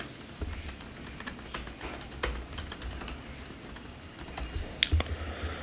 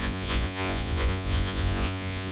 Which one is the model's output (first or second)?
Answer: second